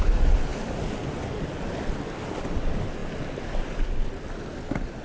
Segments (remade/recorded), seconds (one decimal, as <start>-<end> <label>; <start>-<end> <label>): 0.0-5.0 recorded